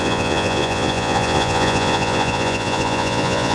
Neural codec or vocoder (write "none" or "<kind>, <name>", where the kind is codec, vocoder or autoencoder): vocoder, Vocos